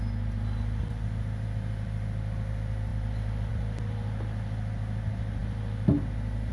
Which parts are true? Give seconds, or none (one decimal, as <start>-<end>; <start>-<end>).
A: 0.0-6.5